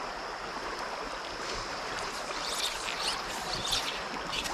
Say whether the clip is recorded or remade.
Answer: recorded